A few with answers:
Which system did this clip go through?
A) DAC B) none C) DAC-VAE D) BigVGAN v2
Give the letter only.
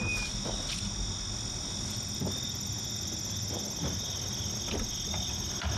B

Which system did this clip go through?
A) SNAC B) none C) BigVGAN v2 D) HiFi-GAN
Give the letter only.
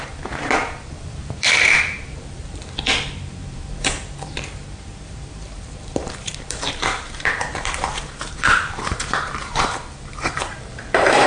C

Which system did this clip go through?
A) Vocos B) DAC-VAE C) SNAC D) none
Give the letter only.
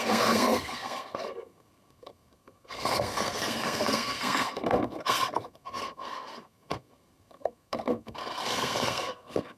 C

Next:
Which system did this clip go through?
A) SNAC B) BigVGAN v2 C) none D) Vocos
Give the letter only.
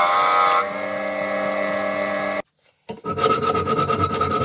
C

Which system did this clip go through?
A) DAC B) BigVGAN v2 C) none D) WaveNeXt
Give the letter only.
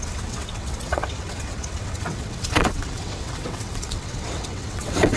D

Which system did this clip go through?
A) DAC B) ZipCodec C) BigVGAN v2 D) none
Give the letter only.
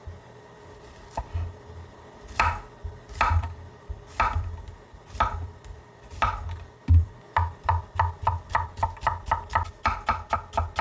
D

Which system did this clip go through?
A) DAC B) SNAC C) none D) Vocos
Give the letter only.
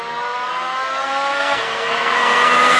B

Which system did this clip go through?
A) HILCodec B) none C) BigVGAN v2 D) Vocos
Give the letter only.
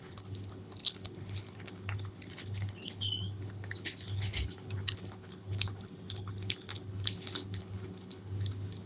A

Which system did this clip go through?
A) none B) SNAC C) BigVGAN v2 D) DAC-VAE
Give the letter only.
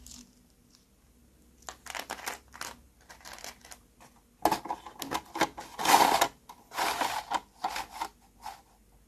A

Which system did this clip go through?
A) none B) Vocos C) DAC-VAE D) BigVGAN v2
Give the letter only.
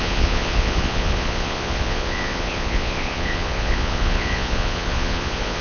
B